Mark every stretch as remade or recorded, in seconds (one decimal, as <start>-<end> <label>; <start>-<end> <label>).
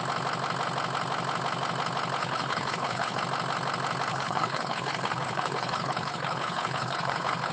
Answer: 0.0-2.2 recorded; 2.2-3.2 remade; 3.2-4.1 recorded; 4.1-7.5 remade